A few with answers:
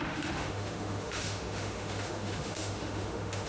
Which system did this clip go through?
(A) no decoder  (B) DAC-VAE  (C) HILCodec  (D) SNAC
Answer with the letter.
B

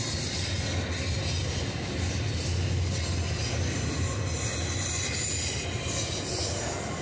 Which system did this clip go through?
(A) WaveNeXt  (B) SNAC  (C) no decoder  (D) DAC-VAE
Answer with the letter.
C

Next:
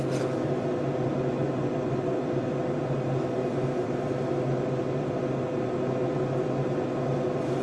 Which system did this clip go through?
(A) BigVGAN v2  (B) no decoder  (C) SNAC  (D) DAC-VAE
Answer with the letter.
B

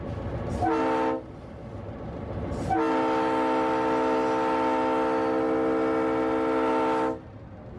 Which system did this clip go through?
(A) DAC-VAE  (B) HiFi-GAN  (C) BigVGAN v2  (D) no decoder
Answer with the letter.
D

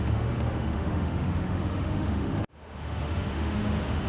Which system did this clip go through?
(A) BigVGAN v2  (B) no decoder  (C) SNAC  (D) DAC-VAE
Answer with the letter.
D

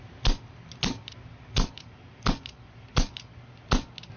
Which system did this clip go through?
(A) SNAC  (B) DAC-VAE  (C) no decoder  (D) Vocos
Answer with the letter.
C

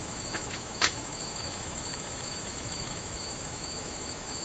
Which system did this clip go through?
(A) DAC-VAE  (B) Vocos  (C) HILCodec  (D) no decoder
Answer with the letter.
A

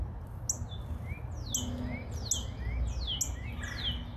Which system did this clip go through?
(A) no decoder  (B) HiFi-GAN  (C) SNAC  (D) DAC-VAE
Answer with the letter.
A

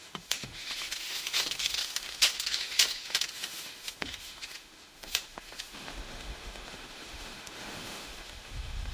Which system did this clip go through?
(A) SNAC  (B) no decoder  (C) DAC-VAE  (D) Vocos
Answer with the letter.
C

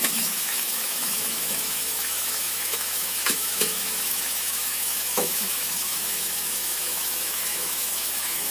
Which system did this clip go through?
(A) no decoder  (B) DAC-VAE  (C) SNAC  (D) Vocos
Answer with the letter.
B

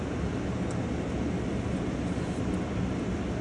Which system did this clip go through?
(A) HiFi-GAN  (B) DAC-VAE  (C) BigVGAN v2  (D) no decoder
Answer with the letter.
D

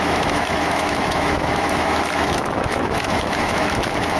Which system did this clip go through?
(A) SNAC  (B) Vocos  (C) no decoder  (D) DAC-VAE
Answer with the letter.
D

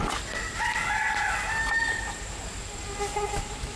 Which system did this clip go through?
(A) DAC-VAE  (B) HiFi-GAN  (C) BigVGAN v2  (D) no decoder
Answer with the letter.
D